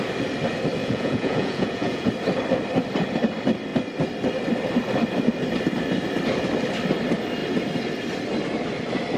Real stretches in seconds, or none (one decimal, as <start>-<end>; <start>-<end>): 0.0-0.8; 2.1-9.2